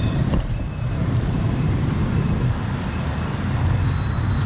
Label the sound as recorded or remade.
remade